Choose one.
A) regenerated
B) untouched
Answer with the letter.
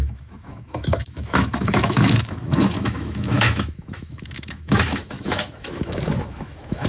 A